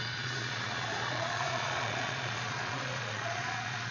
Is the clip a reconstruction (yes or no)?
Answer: yes